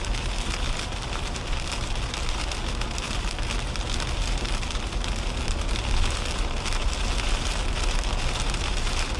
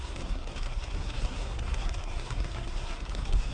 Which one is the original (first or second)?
first